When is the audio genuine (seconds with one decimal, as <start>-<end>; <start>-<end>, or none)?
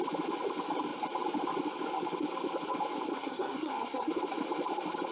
0.0-3.1; 4.1-5.1